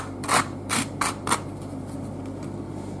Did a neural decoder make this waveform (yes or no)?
yes